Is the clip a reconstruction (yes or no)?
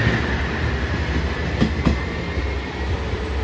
no